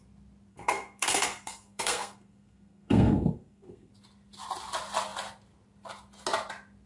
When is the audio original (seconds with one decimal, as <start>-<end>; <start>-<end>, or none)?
0.0-0.5; 3.9-6.9